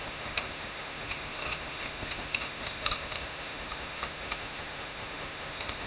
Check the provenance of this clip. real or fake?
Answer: fake